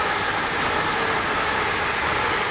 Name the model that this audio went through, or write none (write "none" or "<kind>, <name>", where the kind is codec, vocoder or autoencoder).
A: none